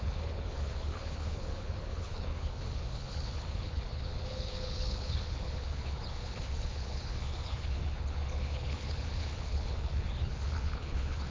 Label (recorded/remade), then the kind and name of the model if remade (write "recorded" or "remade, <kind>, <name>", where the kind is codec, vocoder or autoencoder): remade, codec, HILCodec